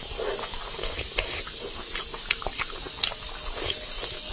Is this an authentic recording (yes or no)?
yes